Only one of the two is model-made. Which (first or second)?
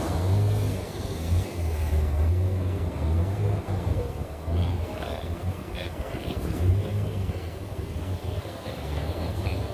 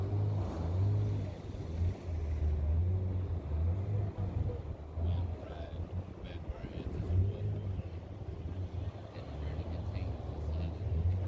first